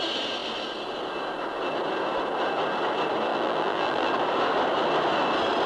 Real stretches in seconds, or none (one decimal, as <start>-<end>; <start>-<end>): 0.0-3.3; 4.1-5.7